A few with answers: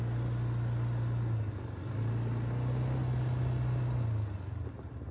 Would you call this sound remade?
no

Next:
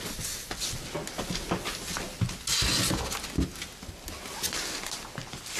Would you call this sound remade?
no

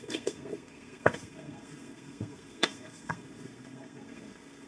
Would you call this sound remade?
yes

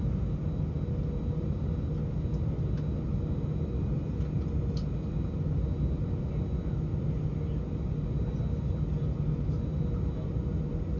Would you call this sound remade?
no